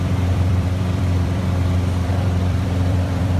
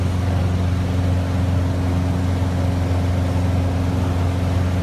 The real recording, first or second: second